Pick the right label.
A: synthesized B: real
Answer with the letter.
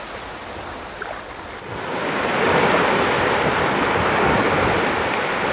B